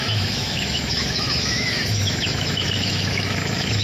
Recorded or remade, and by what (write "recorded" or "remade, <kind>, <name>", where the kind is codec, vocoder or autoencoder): remade, autoencoder, DAC-VAE